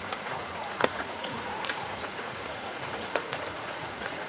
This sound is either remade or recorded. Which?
remade